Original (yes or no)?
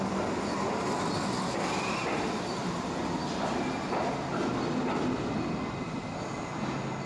yes